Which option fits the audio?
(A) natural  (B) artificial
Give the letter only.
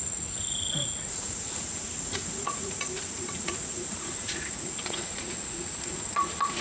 B